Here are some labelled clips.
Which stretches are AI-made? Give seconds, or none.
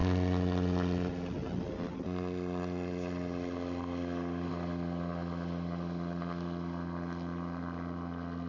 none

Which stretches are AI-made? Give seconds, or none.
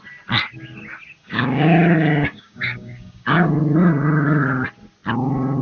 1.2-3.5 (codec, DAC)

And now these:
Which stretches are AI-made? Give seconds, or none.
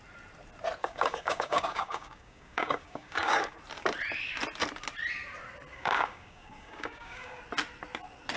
0.8-3.6 (codec, DAC); 5.7-7.4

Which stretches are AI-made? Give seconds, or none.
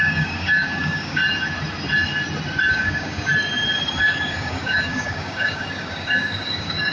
0.0-1.2 (codec, DAC); 2.7-3.3; 4.0-6.9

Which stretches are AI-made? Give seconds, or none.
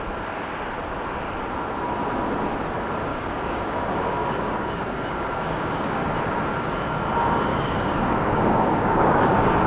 3.1-6.2 (codec, DAC); 7.5-9.7